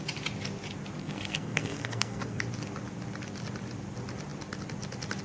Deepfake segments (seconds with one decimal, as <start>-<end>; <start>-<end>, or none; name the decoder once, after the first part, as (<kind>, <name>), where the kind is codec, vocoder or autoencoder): 1.0-2.4 (codec, SNAC)